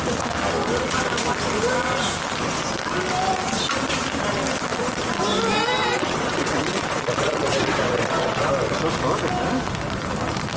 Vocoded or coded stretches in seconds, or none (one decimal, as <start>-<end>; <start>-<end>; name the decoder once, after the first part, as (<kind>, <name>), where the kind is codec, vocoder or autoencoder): 5.8-8.5 (vocoder, WaveNeXt)